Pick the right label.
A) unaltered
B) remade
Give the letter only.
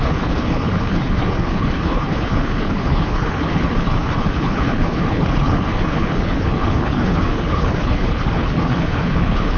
B